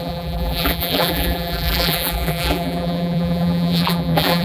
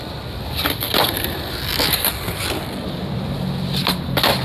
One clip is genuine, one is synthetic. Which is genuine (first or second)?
second